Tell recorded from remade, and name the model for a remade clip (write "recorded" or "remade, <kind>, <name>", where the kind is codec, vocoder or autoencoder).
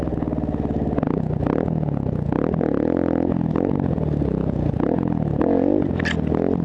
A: recorded